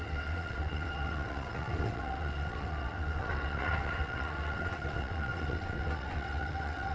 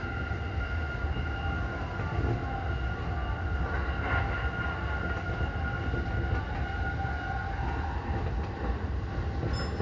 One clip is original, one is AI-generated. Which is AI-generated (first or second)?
first